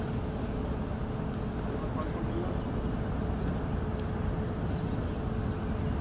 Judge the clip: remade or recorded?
recorded